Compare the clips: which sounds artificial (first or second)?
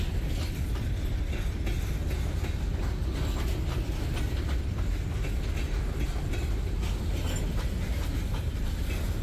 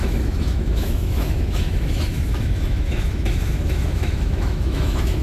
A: second